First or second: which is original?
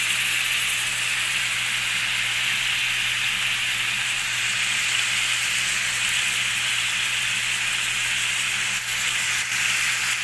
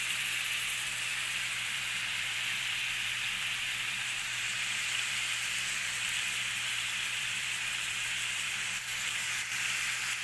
first